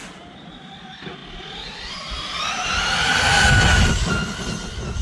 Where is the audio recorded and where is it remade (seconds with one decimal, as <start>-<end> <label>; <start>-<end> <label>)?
0.0-5.0 recorded